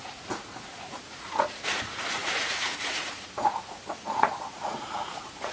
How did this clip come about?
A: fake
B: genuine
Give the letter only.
A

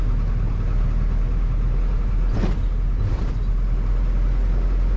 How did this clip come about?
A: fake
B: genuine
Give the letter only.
B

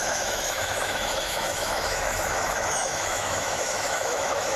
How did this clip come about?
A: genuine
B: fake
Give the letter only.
B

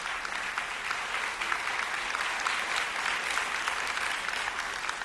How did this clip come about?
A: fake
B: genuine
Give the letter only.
B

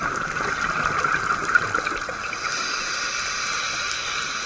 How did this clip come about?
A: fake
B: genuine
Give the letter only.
B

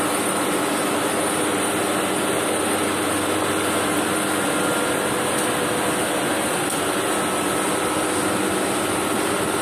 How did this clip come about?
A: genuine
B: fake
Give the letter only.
A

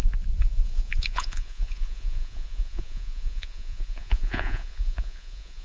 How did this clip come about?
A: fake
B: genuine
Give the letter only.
A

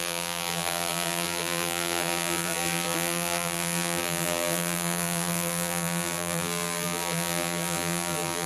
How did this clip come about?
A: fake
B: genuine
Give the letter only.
A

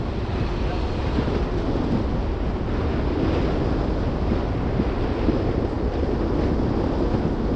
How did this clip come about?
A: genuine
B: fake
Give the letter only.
A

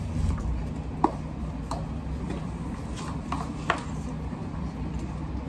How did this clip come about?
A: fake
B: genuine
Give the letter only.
B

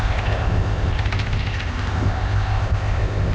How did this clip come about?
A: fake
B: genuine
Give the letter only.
A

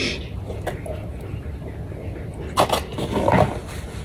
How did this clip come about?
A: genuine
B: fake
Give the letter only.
A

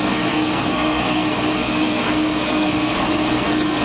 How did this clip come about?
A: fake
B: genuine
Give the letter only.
A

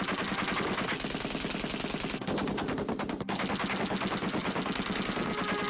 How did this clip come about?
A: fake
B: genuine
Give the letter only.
B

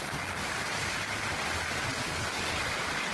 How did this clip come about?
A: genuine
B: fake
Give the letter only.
A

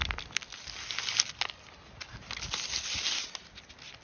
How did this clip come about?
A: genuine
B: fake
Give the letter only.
A